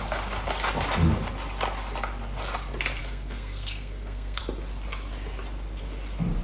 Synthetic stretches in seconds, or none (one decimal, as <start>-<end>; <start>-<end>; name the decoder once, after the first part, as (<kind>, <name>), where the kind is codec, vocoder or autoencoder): 3.0-4.4 (codec, SNAC)